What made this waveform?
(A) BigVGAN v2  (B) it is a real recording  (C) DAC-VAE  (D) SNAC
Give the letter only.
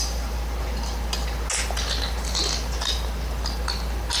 B